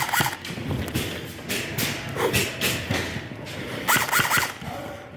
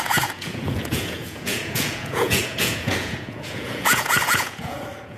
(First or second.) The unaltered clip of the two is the first